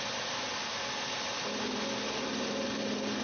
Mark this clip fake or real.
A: real